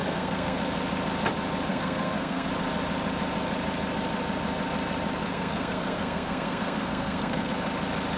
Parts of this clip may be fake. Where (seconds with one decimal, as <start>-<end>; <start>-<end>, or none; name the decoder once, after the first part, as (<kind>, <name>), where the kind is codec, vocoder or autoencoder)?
0.0-0.6 (codec, SNAC); 1.7-2.5; 5.2-7.5